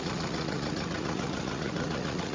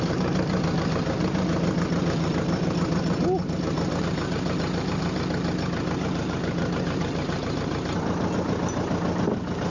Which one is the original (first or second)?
second